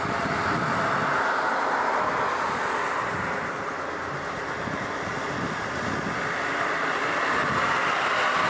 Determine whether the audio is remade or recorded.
recorded